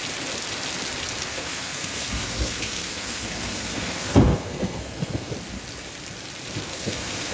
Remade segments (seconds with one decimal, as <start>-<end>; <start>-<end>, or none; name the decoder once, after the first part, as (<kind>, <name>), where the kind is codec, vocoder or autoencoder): 1.3-5.3 (codec, SNAC); 6.7-7.3